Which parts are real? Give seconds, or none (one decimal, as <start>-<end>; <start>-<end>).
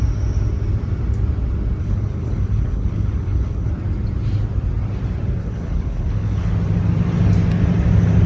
0.0-1.8; 3.7-5.4; 6.5-8.3